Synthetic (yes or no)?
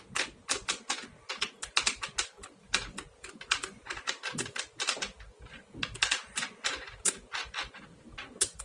no